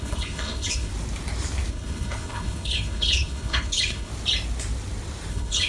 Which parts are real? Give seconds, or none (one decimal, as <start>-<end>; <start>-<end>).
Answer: 0.9-1.7; 4.1-5.3